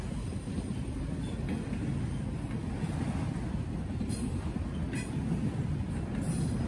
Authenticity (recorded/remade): recorded